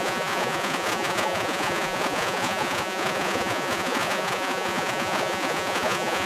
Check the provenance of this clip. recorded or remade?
remade